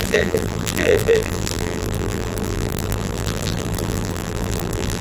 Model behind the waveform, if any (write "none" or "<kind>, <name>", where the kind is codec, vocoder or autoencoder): vocoder, BigVGAN v2